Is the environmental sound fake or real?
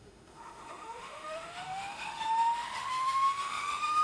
fake